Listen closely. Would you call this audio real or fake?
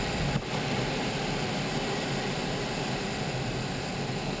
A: real